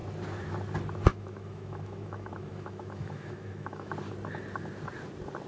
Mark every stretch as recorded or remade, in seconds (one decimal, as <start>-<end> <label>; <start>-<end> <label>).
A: 0.0-1.1 recorded; 1.1-3.9 remade; 3.9-5.5 recorded

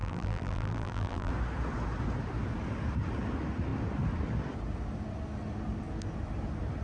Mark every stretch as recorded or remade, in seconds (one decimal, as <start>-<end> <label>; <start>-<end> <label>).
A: 0.0-1.3 remade; 1.3-6.8 recorded

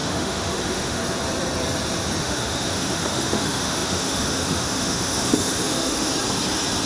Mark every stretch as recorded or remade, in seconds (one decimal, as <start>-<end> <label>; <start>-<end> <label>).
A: 0.0-1.0 remade; 1.0-2.2 recorded; 2.2-6.1 remade; 6.1-6.9 recorded

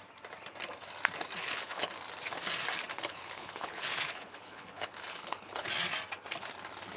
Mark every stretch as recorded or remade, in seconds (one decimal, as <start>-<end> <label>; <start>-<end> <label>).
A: 0.0-1.4 recorded; 1.4-1.9 remade; 1.9-2.9 recorded; 2.9-5.7 remade; 5.7-7.0 recorded

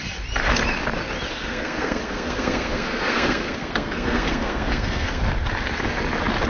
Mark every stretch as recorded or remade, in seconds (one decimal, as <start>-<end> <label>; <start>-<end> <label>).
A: 0.0-1.3 recorded; 1.3-5.2 remade; 5.2-6.5 recorded